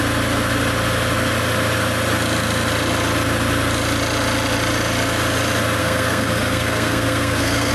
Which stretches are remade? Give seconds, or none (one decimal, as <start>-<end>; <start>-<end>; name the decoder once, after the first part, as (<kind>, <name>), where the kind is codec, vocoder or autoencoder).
5.8-7.7 (codec, SNAC)